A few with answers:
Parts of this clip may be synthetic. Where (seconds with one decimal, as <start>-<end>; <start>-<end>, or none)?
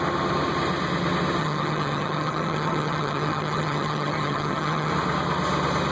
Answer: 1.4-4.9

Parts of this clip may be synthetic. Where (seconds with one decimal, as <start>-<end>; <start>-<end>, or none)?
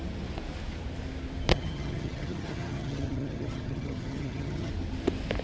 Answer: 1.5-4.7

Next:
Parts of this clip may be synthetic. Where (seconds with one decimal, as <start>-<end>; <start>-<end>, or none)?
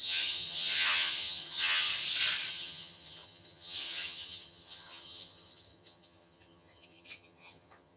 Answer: 0.0-1.9; 2.5-8.0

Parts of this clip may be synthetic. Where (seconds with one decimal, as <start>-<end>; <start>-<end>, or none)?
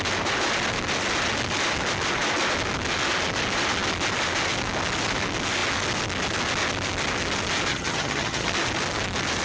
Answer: 7.7-8.5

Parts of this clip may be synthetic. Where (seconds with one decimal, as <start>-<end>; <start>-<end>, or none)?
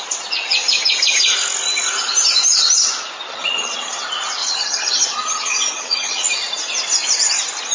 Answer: 3.3-4.0; 4.4-6.2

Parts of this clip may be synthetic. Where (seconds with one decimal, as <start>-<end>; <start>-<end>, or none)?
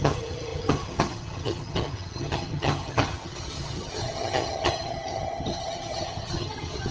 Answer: 0.0-6.9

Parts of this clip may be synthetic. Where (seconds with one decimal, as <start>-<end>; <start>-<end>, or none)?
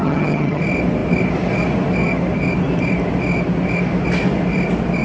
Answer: 0.0-0.6